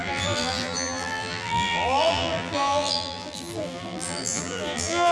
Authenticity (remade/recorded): remade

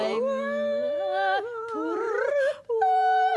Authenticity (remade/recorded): remade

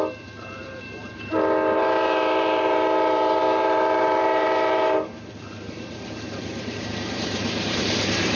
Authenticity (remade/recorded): remade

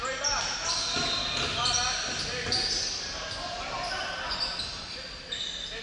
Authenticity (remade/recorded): recorded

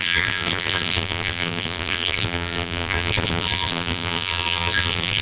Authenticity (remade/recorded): remade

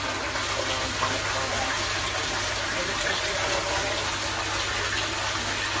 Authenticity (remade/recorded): recorded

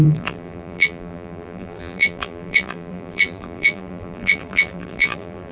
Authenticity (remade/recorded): remade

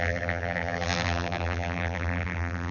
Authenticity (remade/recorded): remade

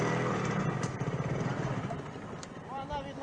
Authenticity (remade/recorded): recorded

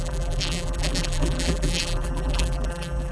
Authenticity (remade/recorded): remade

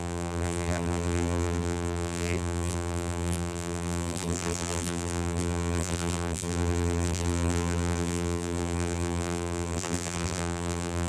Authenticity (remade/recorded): remade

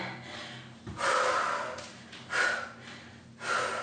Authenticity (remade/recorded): recorded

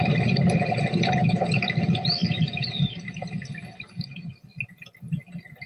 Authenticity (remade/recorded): recorded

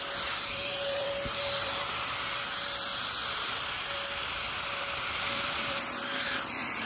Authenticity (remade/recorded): remade